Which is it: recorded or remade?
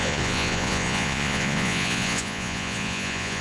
remade